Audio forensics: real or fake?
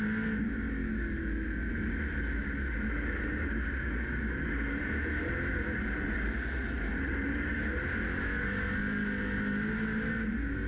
real